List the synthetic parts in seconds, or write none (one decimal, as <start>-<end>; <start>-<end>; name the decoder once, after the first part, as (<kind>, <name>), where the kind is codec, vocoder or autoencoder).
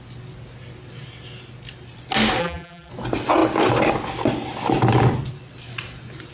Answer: 2.4-2.9 (vocoder, BigVGAN v2)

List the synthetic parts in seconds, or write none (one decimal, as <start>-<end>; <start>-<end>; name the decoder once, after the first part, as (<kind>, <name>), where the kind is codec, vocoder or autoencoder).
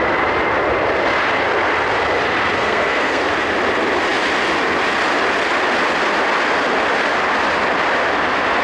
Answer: 2.6-3.2 (codec, SNAC)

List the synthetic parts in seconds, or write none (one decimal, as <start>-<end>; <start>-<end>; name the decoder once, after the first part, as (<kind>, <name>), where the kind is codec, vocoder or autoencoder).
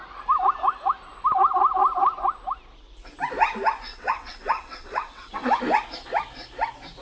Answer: 3.9-5.6 (vocoder, WaveNeXt)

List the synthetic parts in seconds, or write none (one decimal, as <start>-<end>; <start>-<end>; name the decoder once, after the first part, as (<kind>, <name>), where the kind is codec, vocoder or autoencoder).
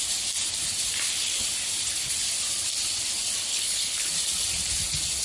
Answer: 3.5-4.1 (codec, HILCodec)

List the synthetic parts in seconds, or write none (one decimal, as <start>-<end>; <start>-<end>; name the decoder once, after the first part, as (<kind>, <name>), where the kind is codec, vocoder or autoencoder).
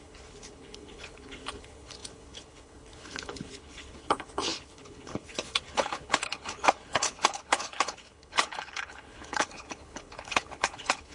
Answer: 0.0-11.1 (codec, HILCodec)